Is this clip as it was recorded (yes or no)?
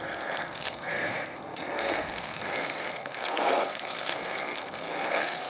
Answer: no